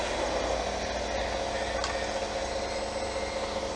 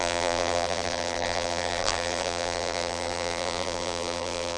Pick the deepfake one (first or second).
second